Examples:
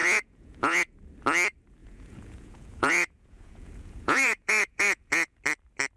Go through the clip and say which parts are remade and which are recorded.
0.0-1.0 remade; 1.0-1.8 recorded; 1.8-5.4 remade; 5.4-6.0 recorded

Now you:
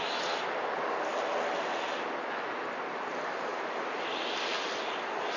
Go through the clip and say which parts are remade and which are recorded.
0.0-3.5 recorded; 3.5-4.8 remade; 4.8-5.4 recorded

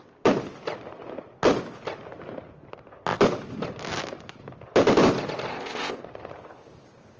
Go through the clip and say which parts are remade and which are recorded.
0.0-5.5 recorded; 5.5-6.0 remade; 6.0-7.2 recorded

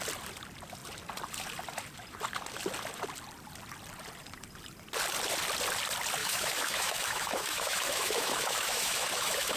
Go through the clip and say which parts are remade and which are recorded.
0.0-6.2 recorded; 6.2-9.6 remade

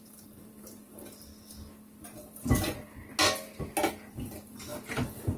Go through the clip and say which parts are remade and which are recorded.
0.0-1.3 remade; 1.3-4.1 recorded; 4.1-4.7 remade; 4.7-5.4 recorded